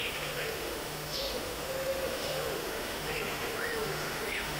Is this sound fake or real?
fake